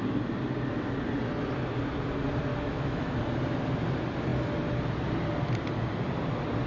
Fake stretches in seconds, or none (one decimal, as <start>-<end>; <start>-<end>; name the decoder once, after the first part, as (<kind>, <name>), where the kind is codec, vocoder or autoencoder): 2.5-3.2 (autoencoder, DAC-VAE)